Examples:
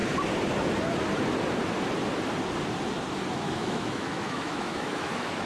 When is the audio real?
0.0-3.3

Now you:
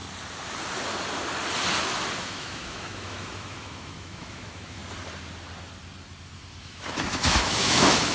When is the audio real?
0.0-2.2; 4.8-6.6

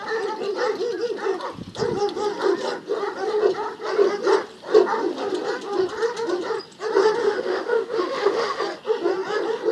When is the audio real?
0.0-7.2; 8.6-9.7